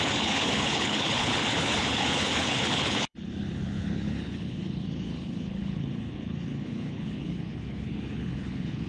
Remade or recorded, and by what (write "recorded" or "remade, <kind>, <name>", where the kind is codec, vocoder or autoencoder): remade, codec, HILCodec